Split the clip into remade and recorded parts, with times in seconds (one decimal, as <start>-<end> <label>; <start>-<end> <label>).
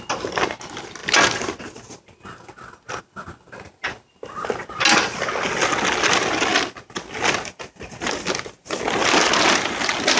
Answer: 0.0-10.2 recorded